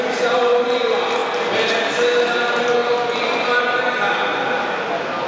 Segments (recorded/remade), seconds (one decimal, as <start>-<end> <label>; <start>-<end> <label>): 0.0-5.3 recorded

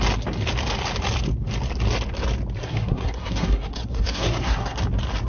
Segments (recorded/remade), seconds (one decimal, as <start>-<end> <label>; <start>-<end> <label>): 0.0-2.6 recorded; 2.6-4.8 remade; 4.8-5.3 recorded

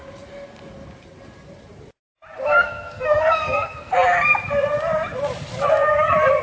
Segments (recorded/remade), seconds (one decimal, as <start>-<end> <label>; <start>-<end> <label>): 0.0-2.5 recorded; 2.5-3.9 remade; 3.9-6.4 recorded

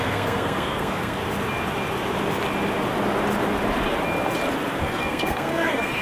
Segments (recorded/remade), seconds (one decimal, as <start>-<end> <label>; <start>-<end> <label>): 0.0-1.2 remade; 1.2-4.8 recorded; 4.8-6.0 remade